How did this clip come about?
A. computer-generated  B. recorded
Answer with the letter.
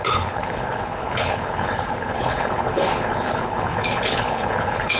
A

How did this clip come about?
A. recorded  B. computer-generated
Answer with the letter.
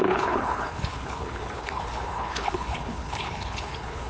B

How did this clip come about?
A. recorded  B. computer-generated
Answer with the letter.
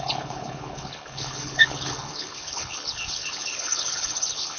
B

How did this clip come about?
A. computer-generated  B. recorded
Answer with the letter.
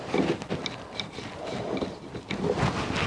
B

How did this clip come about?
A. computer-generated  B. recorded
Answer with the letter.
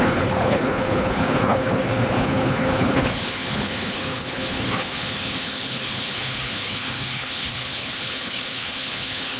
A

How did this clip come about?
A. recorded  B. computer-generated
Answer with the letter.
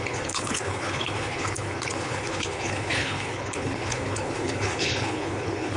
B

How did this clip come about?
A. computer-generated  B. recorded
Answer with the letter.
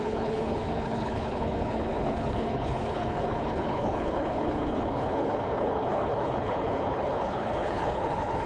A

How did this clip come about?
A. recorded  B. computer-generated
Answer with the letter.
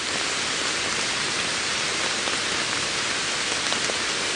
A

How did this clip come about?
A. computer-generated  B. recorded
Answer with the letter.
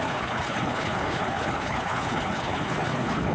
A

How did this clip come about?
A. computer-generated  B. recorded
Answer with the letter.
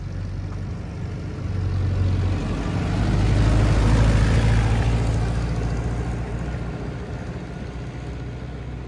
B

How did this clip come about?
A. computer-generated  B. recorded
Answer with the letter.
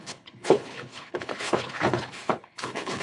A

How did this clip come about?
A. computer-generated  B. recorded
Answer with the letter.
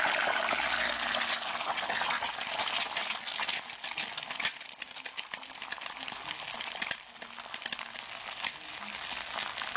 B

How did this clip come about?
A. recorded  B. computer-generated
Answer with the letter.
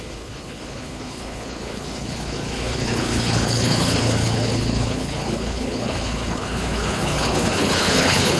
B